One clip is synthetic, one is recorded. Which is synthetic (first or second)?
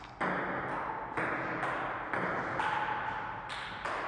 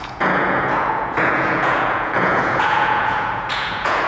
second